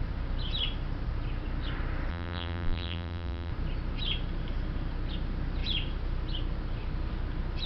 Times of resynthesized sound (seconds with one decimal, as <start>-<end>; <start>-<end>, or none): 2.1-3.5